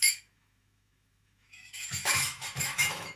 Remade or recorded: remade